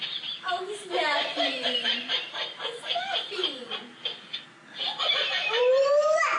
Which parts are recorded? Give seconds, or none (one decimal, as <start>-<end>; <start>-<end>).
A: 4.1-5.1